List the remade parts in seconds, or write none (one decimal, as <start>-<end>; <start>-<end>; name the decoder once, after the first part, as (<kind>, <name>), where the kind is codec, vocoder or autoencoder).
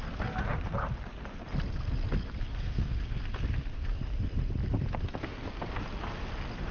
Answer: 2.5-3.2 (codec, SNAC)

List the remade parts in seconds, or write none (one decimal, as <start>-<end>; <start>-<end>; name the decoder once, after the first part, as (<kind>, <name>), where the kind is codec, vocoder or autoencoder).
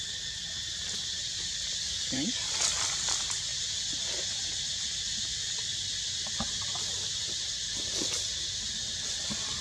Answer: 1.8-2.5 (codec, DAC)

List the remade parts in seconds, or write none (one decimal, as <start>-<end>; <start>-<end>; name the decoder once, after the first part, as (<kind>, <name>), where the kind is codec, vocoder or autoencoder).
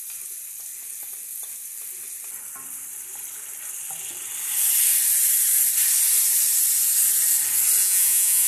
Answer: 7.8-8.5 (vocoder, Vocos)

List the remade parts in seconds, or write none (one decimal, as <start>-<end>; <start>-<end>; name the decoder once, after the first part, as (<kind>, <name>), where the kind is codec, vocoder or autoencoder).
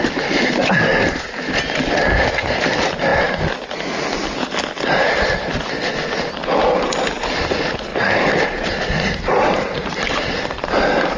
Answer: 7.9-10.3 (vocoder, BigVGAN v2)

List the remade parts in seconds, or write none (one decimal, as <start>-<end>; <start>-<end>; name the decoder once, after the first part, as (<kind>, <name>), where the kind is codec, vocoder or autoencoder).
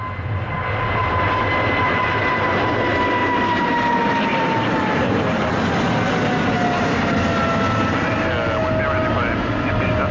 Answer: 1.0-2.5 (vocoder, BigVGAN v2); 3.2-5.6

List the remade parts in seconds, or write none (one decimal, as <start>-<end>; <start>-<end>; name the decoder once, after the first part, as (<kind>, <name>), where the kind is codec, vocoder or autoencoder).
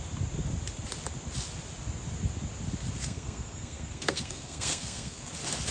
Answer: 3.0-5.3 (codec, SNAC)